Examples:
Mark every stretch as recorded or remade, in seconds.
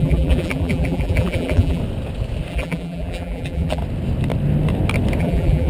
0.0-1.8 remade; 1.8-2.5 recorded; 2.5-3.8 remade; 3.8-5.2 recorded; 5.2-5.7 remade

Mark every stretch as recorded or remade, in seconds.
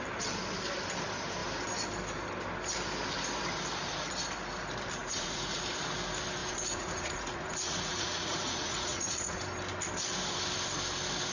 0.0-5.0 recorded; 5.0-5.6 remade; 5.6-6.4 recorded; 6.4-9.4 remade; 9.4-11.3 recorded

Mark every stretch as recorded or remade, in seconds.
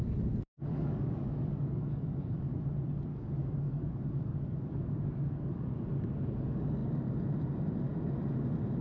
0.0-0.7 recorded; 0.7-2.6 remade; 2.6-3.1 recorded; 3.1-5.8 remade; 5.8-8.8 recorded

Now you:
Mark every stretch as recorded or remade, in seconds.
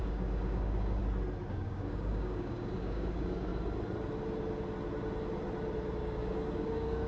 0.0-1.0 remade; 1.0-1.5 recorded; 1.5-3.5 remade; 3.5-6.0 recorded; 6.0-7.1 remade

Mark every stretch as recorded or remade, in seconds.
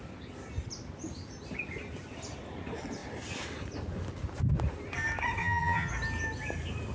0.0-5.4 recorded; 5.4-5.9 remade; 5.9-6.9 recorded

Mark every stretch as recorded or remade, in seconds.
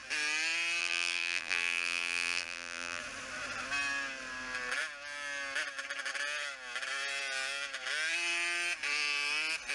0.0-0.8 recorded; 0.8-3.0 remade; 3.0-9.7 recorded